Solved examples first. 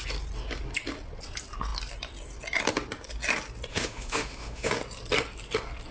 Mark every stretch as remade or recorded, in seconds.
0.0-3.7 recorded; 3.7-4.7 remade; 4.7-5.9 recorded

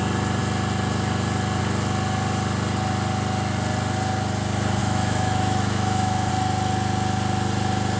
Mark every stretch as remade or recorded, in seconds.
0.0-4.8 recorded; 4.8-6.3 remade; 6.3-8.0 recorded